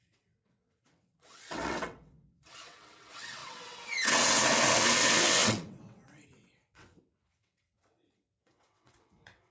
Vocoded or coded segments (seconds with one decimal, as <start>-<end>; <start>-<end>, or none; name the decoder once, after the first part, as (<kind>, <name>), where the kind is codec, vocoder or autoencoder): 0.0-9.5 (vocoder, WaveNeXt)

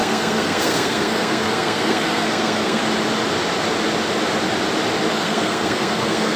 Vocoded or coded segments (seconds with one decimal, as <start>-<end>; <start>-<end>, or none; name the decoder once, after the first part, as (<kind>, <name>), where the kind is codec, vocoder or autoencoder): 0.0-2.8 (codec, SNAC); 5.1-6.4

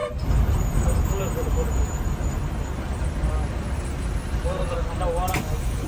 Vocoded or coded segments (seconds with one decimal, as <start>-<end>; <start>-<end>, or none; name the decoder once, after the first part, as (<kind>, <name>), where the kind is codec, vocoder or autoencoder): 0.0-5.9 (vocoder, BigVGAN v2)